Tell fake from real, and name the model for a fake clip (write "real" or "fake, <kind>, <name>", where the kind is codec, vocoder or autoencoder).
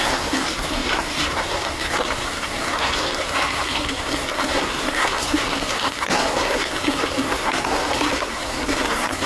fake, codec, SNAC